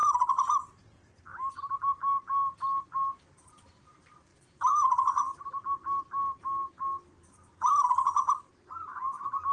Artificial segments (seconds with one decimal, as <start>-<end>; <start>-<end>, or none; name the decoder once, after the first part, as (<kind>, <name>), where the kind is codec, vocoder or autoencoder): none